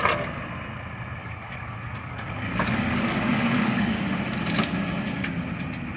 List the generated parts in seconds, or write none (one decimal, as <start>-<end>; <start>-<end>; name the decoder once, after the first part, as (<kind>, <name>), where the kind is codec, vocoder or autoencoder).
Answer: 1.2-4.0 (codec, DAC)